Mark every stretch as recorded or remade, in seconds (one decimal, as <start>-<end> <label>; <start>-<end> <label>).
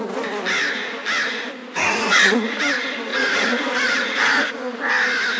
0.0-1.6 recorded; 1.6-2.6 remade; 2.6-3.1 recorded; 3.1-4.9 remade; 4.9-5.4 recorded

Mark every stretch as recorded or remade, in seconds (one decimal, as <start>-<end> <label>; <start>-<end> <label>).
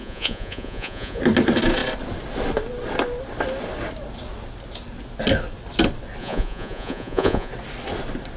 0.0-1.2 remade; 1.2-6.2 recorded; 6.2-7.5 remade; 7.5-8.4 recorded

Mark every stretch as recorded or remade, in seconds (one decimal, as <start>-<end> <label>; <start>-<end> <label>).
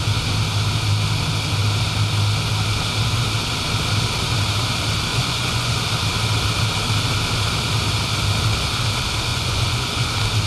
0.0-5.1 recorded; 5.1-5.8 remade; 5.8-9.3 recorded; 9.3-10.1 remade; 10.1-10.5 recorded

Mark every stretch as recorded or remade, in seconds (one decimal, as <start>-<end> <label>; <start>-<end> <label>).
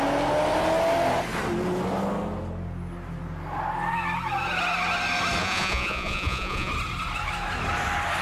0.0-5.4 recorded; 5.4-6.7 remade; 6.7-8.2 recorded